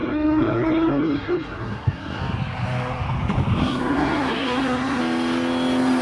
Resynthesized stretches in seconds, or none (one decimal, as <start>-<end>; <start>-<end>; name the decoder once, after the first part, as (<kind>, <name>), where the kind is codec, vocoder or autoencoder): 0.0-2.2 (codec, SNAC); 3.6-5.0